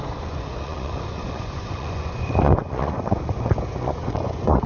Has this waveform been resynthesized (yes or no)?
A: yes